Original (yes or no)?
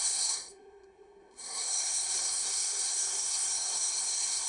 no